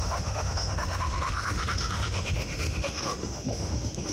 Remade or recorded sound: remade